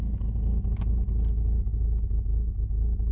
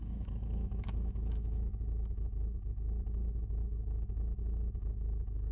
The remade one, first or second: second